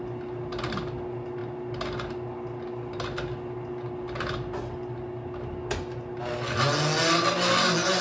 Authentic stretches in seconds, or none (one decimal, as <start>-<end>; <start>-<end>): 0.0-8.0